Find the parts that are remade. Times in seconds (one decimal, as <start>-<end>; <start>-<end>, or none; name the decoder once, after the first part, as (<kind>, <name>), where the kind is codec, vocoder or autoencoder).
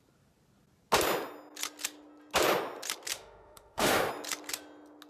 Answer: 3.1-4.1 (autoencoder, DAC-VAE)